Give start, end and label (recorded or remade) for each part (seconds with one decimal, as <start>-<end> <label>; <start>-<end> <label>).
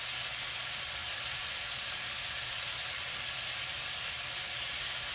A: 0.0-1.0 recorded; 1.0-4.1 remade; 4.1-5.1 recorded